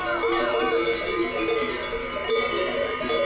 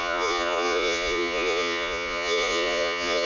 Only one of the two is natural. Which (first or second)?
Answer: first